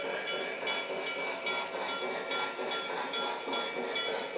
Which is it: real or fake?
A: real